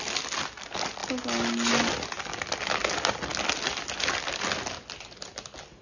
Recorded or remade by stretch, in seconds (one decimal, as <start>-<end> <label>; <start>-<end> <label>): 0.0-5.8 recorded